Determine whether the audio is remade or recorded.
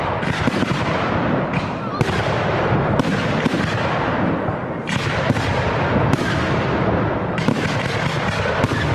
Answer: recorded